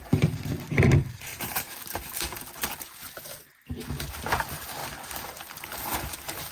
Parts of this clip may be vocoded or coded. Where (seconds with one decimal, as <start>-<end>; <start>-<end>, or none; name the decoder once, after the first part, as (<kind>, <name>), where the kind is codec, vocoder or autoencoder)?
0.0-6.5 (vocoder, BigVGAN v2)